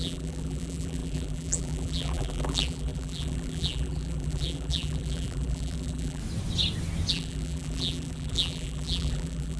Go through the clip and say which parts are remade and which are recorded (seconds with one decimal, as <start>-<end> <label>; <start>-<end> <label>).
0.0-6.2 remade; 6.2-7.1 recorded; 7.1-9.6 remade